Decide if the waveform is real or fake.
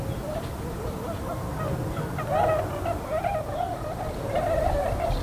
fake